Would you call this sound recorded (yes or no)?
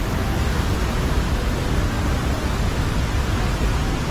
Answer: yes